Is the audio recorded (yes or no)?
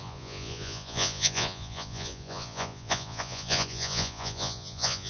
no